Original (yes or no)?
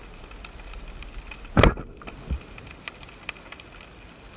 yes